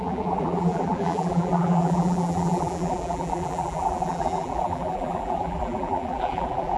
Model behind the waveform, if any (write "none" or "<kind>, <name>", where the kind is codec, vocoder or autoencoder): vocoder, BigVGAN v2